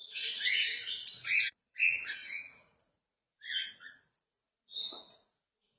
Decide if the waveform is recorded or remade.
remade